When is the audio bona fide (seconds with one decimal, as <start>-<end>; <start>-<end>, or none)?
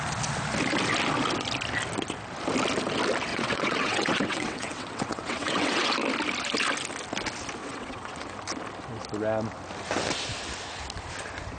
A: 0.0-3.3; 5.9-7.6; 8.3-11.6